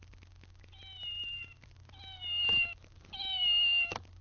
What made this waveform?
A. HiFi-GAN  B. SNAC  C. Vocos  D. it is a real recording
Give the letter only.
D